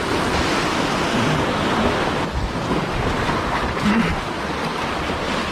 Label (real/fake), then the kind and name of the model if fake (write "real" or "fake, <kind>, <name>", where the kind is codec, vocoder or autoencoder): real